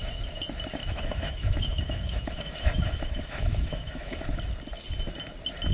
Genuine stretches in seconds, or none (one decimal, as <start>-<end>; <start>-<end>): 0.0-0.8; 4.2-5.7

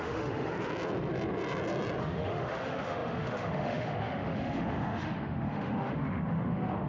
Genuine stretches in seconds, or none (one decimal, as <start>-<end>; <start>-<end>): 0.5-2.0

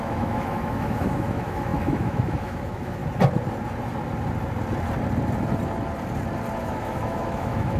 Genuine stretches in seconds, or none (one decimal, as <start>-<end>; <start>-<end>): 3.0-6.6

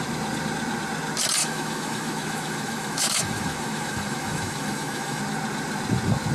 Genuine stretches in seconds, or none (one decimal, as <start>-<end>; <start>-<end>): 0.0-1.4; 5.2-6.3

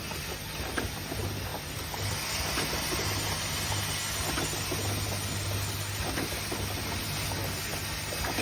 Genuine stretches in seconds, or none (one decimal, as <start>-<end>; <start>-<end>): 0.0-8.4

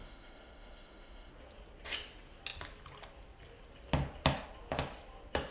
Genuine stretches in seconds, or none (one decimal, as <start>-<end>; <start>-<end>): 1.3-5.5

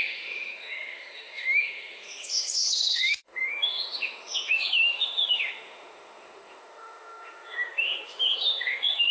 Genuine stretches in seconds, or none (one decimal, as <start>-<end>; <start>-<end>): none